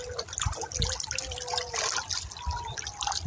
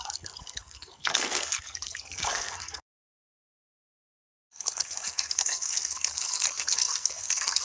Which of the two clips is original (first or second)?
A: first